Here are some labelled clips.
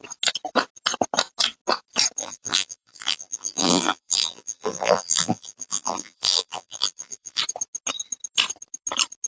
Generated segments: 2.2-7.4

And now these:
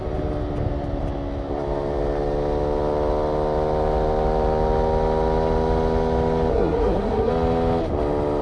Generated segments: 6.5-7.3

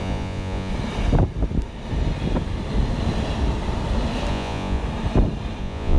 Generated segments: 0.0-0.7; 4.3-4.8; 5.6-6.0